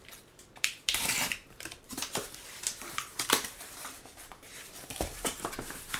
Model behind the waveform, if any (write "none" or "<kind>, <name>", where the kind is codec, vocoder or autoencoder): vocoder, BigVGAN v2